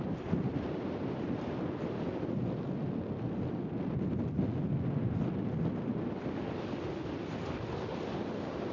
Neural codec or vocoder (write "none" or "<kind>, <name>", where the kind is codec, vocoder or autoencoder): none